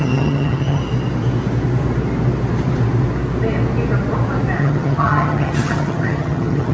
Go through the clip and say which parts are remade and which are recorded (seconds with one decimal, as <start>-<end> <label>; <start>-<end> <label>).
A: 0.0-0.8 remade; 0.8-4.6 recorded; 4.6-6.7 remade